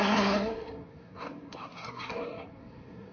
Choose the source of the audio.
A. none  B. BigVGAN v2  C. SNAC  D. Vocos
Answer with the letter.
C